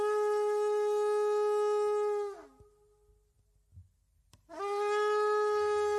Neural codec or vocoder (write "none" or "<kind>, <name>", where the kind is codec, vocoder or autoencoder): none